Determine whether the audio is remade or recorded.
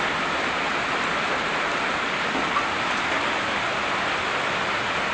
recorded